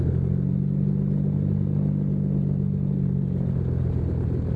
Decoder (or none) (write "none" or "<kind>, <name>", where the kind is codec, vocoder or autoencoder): none